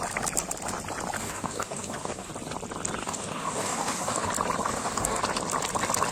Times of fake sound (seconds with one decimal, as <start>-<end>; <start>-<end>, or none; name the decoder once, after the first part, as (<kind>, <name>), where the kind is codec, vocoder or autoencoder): 1.2-2.3 (codec, DAC); 3.0-4.3; 4.7-5.2